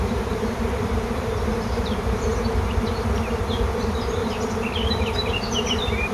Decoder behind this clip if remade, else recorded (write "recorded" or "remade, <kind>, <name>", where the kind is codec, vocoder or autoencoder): remade, vocoder, BigVGAN v2